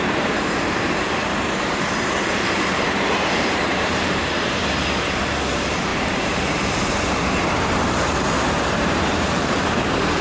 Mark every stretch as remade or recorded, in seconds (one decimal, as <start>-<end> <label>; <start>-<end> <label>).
0.0-10.2 remade